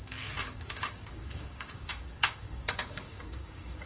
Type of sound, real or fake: fake